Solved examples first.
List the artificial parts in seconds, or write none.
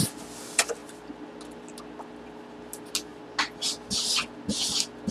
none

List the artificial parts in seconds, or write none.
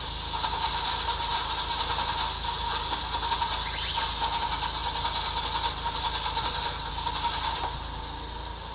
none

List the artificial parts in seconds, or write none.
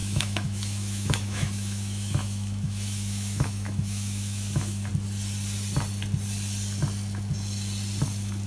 0.0-4.9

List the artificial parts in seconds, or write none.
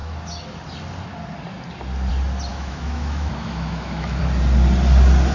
2.5-4.2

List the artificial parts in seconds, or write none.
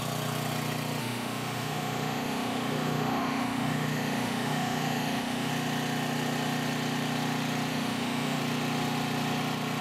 1.0-5.5; 7.7-8.4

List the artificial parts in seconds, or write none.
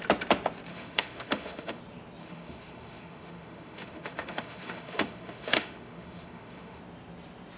0.7-1.8; 2.2-6.8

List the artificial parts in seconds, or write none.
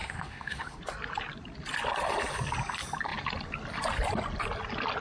0.0-0.8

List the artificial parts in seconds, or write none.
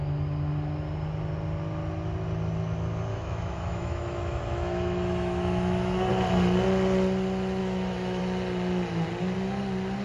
3.1-6.1; 7.6-8.2